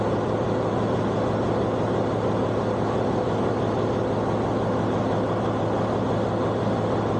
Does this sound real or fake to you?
real